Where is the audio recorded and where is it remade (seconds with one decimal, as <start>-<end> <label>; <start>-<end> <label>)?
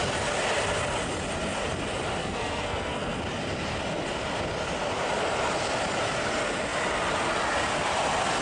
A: 0.0-2.2 recorded; 2.2-3.2 remade; 3.2-8.4 recorded